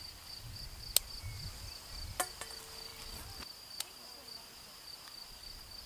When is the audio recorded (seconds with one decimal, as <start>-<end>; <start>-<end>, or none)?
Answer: 0.0-5.9